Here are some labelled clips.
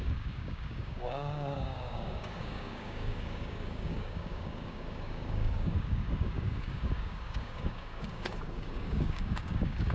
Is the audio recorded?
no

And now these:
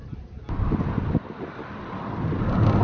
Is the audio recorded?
yes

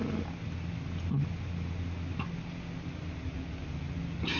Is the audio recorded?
yes